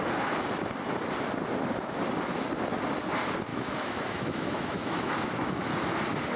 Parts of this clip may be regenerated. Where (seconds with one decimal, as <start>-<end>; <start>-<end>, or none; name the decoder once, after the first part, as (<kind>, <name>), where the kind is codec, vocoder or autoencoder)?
3.5-5.7 (autoencoder, DAC-VAE)